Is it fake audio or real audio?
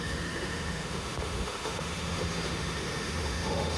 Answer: fake